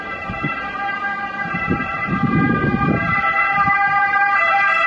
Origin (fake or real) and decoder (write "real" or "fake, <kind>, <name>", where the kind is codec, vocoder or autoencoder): fake, vocoder, BigVGAN v2